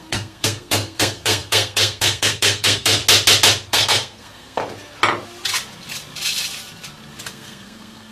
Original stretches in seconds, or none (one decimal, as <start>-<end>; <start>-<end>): 3.0-3.7; 4.6-7.3